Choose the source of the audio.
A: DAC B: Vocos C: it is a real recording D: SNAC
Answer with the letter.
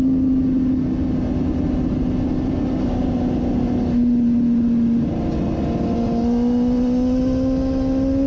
C